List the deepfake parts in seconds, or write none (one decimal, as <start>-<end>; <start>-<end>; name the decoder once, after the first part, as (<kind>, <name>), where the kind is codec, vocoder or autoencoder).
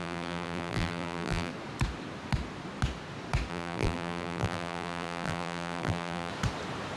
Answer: 0.0-1.5 (vocoder, BigVGAN v2); 3.5-6.3